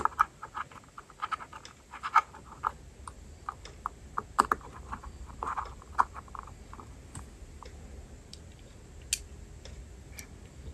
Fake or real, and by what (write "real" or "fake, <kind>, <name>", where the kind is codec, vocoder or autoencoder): real